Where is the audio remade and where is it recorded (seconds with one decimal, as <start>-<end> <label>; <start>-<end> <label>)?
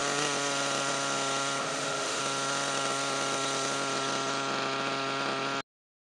0.0-1.6 recorded; 1.6-2.2 remade; 2.2-6.2 recorded